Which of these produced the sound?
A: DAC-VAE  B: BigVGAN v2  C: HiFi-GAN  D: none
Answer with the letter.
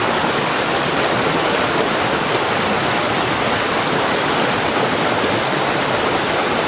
D